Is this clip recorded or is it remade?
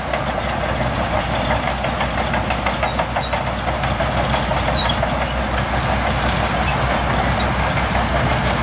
recorded